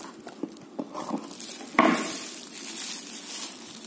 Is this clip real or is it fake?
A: real